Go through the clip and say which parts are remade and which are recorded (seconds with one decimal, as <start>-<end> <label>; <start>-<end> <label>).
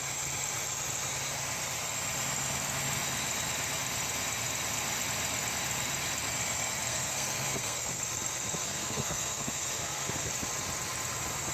0.0-6.9 recorded; 6.9-8.0 remade; 8.0-8.6 recorded; 8.6-10.3 remade; 10.3-11.5 recorded